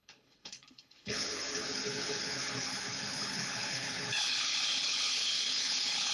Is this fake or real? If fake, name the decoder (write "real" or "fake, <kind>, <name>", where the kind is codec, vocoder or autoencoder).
fake, codec, HILCodec